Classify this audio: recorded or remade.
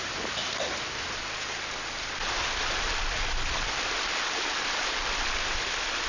recorded